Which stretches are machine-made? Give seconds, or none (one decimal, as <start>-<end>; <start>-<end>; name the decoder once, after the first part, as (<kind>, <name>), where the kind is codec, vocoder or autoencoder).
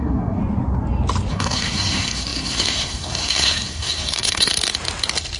0.0-0.4 (codec, SNAC); 1.3-4.5